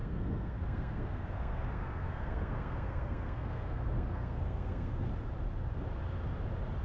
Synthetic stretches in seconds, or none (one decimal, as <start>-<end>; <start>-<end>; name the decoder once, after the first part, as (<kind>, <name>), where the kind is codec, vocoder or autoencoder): 0.0-5.1 (codec, SNAC)